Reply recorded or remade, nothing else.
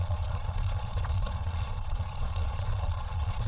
remade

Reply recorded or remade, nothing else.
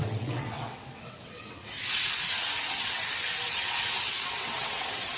remade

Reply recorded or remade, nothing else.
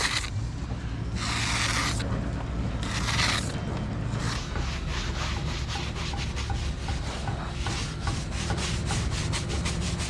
recorded